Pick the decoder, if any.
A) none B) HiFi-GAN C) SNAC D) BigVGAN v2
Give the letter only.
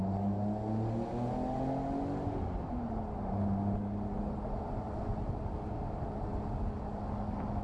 A